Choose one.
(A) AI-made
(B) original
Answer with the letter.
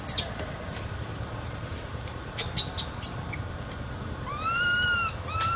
B